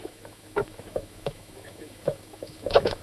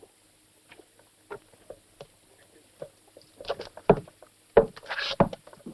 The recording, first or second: second